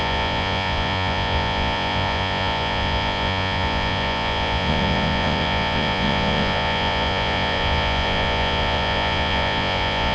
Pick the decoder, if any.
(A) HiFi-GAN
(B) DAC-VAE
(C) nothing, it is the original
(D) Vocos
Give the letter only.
D